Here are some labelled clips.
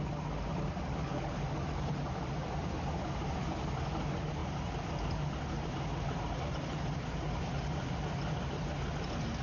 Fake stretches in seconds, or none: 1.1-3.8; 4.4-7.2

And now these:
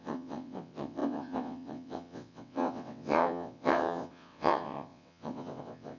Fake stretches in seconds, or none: 0.0-6.0